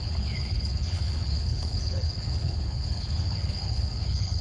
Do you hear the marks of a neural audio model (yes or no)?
yes